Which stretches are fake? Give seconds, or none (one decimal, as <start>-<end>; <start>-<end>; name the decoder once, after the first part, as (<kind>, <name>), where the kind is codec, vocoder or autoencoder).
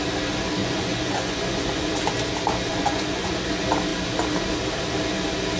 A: 0.6-1.9 (vocoder, Vocos); 2.7-3.3